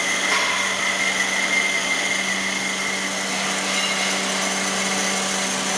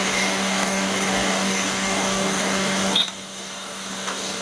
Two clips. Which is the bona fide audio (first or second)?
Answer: first